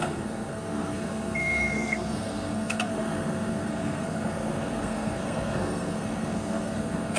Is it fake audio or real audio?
fake